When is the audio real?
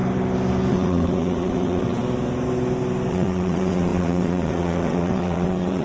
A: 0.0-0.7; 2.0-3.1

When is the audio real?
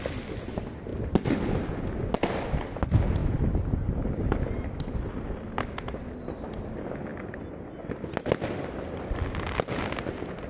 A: 0.0-10.5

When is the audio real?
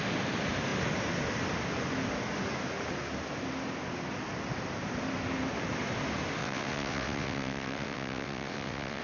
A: 0.0-6.4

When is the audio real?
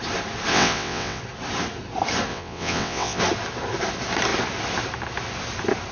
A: 0.0-0.5; 1.2-2.3; 3.2-5.9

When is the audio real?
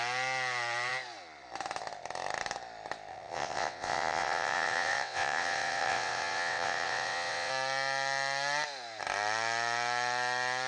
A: 0.0-3.1; 7.5-10.7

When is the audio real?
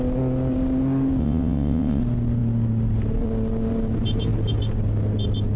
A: 0.0-1.2; 2.0-5.6